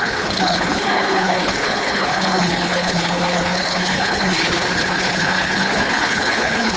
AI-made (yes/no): yes